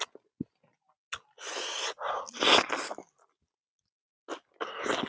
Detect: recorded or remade recorded